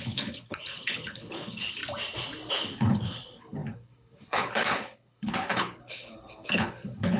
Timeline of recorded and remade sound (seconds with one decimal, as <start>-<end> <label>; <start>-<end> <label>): 0.0-1.8 remade; 1.8-2.5 recorded; 2.5-7.2 remade